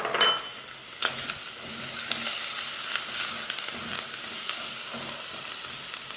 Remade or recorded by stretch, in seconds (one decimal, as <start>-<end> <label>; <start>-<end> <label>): 0.0-6.2 recorded